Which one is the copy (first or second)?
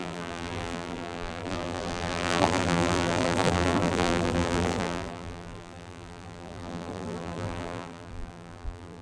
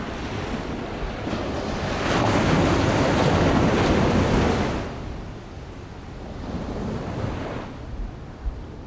first